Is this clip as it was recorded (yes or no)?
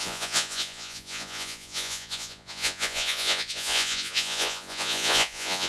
no